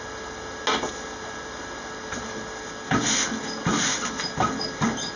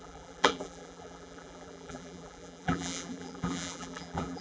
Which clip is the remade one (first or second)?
second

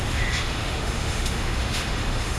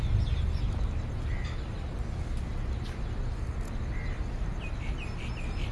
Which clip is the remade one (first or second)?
first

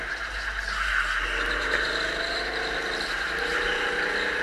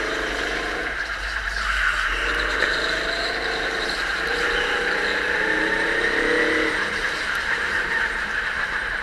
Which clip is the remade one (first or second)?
second